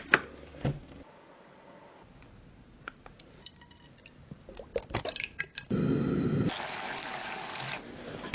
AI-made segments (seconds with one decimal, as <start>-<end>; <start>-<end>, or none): none